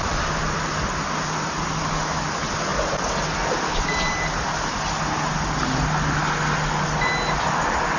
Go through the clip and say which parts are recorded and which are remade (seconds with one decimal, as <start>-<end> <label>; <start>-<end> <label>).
0.0-8.0 recorded